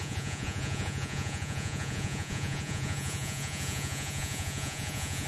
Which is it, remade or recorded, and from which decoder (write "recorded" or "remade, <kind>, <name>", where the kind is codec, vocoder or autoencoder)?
remade, vocoder, Vocos